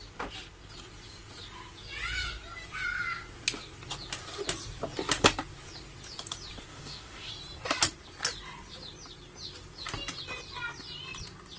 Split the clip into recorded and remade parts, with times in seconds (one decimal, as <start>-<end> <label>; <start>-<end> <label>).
0.0-6.7 recorded; 6.7-7.3 remade; 7.3-11.6 recorded